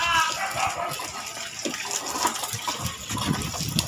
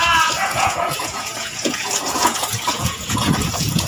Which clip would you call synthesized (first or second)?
second